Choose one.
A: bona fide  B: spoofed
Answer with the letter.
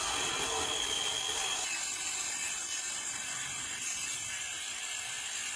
A